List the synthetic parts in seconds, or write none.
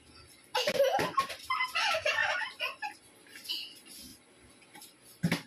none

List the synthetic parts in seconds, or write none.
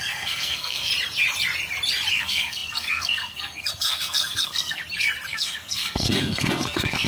0.0-0.9 (codec, SNAC); 2.1-4.8; 5.3-7.1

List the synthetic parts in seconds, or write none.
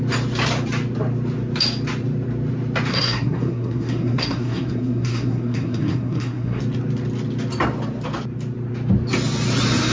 2.9-6.6 (codec, SNAC)